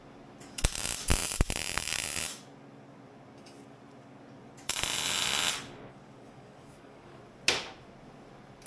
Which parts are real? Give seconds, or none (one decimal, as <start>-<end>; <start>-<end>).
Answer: 0.0-5.9; 7.2-8.7